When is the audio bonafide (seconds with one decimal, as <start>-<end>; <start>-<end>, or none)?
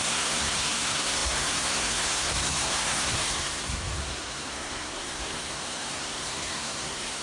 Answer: none